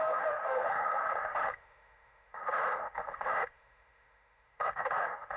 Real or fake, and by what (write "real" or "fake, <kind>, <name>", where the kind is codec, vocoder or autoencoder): fake, autoencoder, DAC-VAE